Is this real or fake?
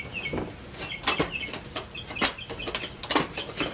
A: real